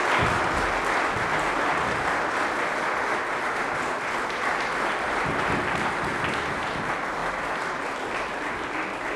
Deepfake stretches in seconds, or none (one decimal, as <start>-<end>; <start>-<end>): none